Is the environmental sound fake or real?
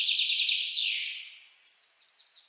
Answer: real